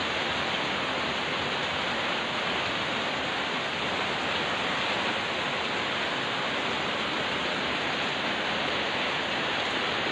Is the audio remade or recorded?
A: recorded